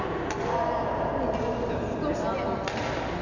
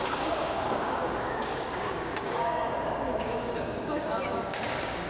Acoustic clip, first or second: first